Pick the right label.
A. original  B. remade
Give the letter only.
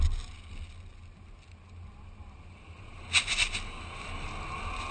A